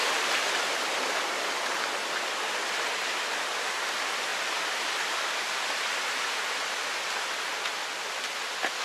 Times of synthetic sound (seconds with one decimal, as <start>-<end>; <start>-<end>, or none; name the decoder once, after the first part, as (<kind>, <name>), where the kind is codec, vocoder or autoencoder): none